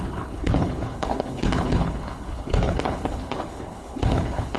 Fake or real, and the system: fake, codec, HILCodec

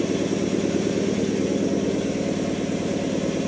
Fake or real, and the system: real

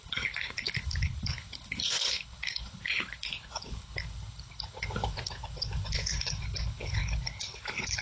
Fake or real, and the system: fake, codec, HILCodec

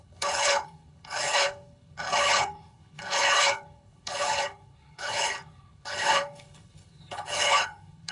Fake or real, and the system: fake, codec, HILCodec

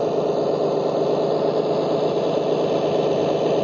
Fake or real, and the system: real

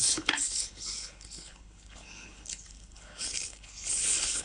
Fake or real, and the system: fake, codec, HILCodec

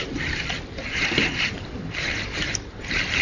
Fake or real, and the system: real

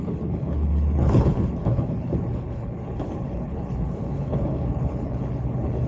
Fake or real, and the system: fake, codec, HILCodec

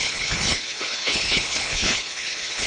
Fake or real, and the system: fake, codec, HILCodec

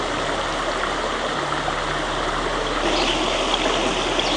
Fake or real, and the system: real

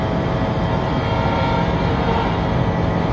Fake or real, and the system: real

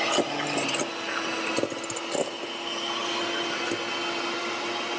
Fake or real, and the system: real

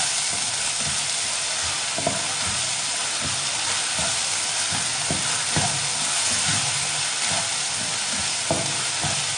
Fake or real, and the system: real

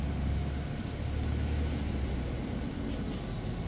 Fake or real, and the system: real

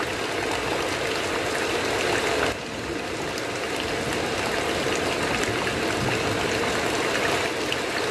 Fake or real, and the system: real